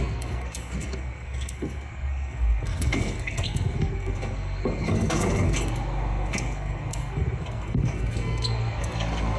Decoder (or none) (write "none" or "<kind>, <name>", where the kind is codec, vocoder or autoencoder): codec, SNAC